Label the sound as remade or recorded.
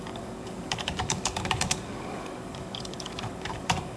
remade